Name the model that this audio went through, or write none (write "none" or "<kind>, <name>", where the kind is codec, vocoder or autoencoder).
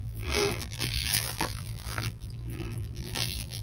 vocoder, BigVGAN v2